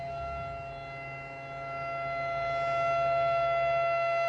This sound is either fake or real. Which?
real